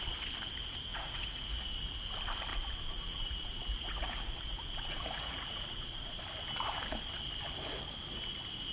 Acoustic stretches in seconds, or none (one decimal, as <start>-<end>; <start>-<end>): 0.0-0.9; 1.9-2.5; 6.2-8.7